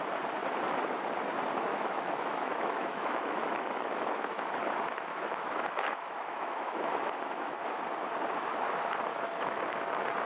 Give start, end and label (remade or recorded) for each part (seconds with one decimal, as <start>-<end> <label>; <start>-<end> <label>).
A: 0.0-1.7 recorded; 1.7-4.5 remade; 4.5-4.9 recorded; 4.9-7.8 remade; 7.8-9.1 recorded; 9.1-9.6 remade; 9.6-10.3 recorded